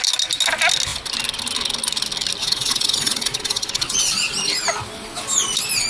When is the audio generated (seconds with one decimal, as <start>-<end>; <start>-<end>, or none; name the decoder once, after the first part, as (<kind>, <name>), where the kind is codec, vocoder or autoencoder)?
2.4-4.3 (vocoder, Vocos)